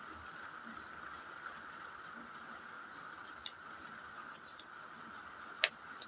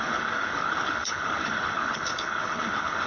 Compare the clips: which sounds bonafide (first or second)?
first